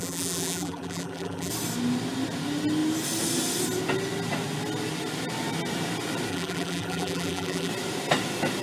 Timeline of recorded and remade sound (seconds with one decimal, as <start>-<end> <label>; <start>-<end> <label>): 0.0-1.5 remade; 1.5-6.3 recorded; 6.3-7.7 remade; 7.7-8.6 recorded